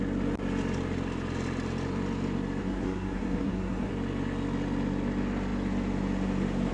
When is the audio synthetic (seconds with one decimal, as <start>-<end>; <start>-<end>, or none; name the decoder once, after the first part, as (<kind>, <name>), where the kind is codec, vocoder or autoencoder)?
2.6-3.9 (codec, SNAC)